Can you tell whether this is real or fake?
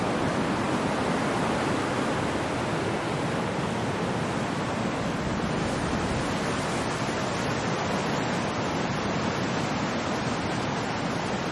real